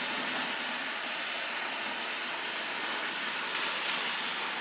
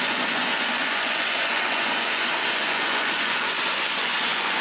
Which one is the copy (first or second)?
second